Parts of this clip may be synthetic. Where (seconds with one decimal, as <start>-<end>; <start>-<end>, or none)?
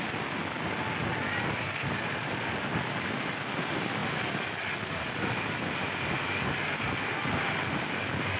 none